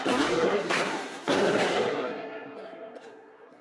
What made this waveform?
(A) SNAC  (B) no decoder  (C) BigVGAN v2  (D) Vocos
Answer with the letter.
A